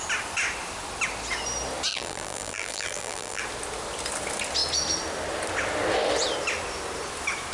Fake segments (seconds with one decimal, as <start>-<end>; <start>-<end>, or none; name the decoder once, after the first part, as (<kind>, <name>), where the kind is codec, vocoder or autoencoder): 1.9-3.4 (vocoder, BigVGAN v2)